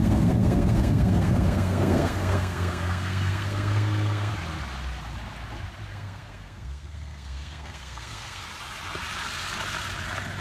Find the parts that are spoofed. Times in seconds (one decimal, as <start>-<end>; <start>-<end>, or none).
0.0-4.3; 5.9-8.4